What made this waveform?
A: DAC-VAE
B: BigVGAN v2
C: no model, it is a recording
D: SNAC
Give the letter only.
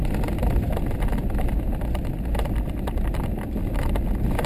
C